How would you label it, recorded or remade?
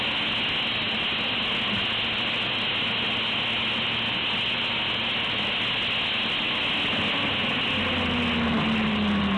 recorded